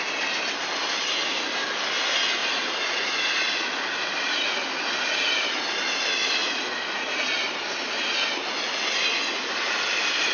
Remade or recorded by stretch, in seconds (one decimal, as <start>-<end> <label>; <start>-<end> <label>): 0.0-2.4 recorded; 2.4-3.2 remade; 3.2-6.4 recorded; 6.4-7.2 remade; 7.2-10.3 recorded